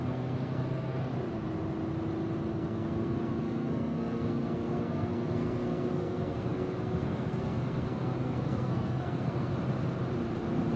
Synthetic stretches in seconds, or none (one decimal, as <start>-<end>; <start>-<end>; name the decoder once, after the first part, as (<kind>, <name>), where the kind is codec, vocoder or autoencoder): 0.0-1.1 (codec, SNAC); 2.5-9.5